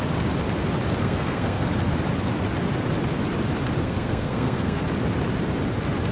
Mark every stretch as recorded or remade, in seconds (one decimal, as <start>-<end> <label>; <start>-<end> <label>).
0.0-1.0 recorded; 1.0-1.7 remade; 1.7-3.8 recorded; 3.8-4.8 remade; 4.8-6.1 recorded